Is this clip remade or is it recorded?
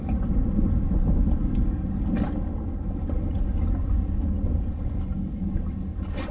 recorded